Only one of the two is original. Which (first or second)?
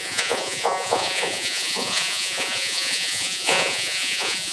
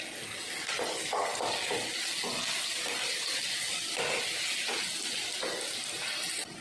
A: second